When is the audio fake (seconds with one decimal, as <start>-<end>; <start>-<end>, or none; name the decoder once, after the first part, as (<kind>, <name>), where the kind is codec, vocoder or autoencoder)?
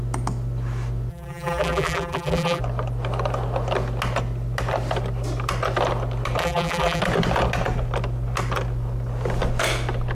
1.1-2.6 (vocoder, BigVGAN v2); 6.4-7.0